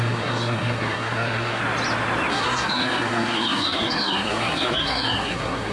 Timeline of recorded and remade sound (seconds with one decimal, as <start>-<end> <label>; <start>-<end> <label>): 0.0-1.6 remade; 1.6-2.3 recorded; 2.3-5.7 remade